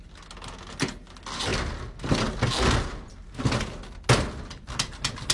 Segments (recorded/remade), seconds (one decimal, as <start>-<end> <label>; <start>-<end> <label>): 0.0-5.3 recorded